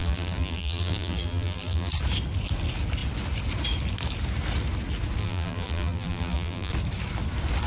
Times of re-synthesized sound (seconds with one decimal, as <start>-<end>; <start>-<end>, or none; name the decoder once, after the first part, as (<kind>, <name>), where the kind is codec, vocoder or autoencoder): 0.0-1.9 (vocoder, BigVGAN v2); 5.2-6.7